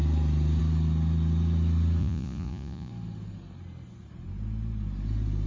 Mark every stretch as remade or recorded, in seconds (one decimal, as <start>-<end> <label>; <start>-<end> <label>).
0.0-2.0 recorded; 2.0-2.9 remade; 2.9-5.5 recorded